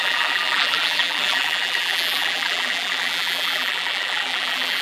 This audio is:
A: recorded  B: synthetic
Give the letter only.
B